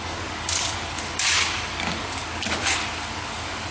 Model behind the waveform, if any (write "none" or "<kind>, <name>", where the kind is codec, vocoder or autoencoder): codec, DAC